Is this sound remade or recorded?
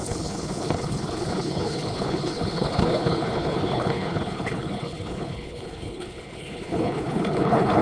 remade